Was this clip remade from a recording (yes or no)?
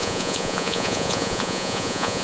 yes